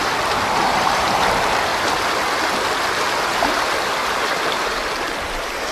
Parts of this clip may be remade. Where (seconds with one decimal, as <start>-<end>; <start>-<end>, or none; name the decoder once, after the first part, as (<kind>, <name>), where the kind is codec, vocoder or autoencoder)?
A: 0.8-1.7 (vocoder, BigVGAN v2); 3.3-5.7